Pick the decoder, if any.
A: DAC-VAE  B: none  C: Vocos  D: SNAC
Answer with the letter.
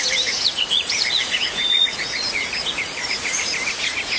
C